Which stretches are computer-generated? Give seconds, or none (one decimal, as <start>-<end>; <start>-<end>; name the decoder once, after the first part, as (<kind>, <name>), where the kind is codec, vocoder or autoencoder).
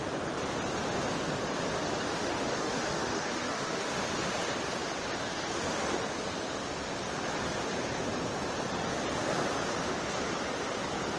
2.2-3.9 (autoencoder, DAC-VAE)